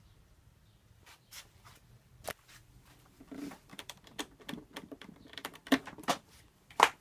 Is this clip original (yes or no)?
no